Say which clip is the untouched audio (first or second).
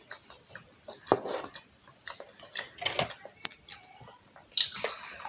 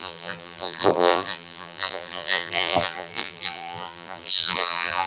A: first